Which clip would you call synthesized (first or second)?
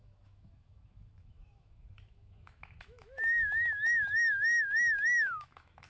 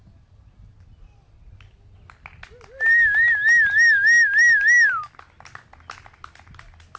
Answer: first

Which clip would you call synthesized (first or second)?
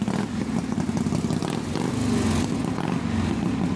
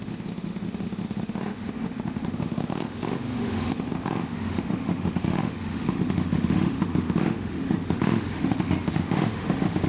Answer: second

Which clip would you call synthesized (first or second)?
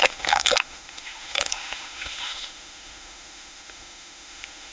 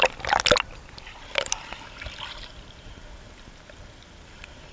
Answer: first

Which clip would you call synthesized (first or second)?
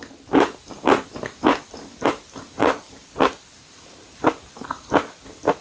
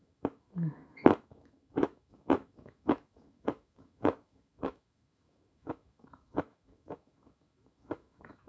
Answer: second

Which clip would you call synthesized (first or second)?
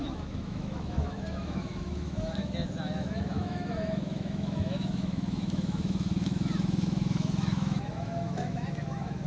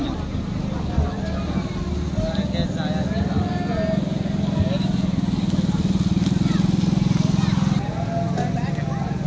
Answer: first